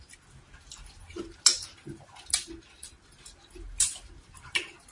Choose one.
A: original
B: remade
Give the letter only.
A